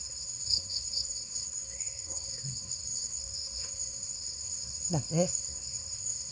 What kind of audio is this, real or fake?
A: fake